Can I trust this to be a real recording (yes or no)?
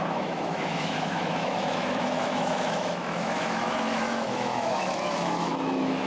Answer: no